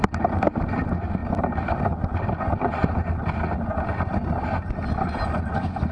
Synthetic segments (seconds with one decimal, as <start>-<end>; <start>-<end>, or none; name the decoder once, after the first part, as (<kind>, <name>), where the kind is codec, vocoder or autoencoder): none